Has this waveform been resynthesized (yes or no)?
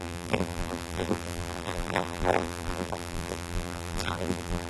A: yes